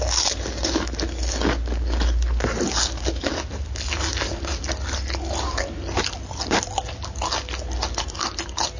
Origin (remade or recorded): recorded